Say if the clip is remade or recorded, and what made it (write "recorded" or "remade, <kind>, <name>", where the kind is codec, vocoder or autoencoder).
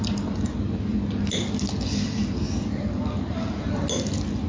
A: recorded